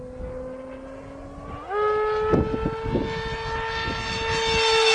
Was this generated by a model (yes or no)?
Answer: no